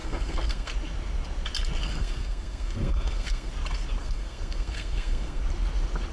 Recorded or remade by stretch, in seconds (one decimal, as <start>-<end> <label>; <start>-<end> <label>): 0.0-0.7 remade; 0.7-1.8 recorded; 1.8-3.5 remade; 3.5-4.0 recorded; 4.0-5.4 remade; 5.4-6.1 recorded